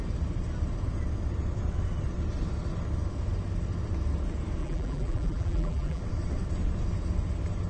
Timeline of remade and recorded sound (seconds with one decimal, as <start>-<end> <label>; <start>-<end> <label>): 0.0-4.6 recorded; 4.6-6.0 remade; 6.0-7.7 recorded